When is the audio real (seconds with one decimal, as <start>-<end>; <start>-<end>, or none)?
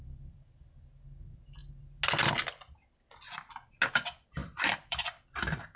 0.0-4.4; 5.0-5.8